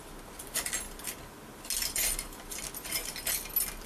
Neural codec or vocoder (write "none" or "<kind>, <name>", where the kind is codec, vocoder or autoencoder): none